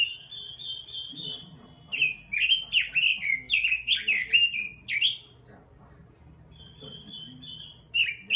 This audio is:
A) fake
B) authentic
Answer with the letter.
B